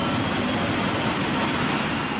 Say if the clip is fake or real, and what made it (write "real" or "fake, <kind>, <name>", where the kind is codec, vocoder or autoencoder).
real